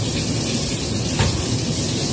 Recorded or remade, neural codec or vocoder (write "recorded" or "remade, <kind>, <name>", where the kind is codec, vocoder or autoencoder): recorded